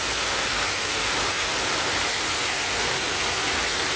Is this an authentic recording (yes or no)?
yes